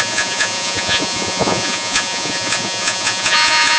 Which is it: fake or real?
fake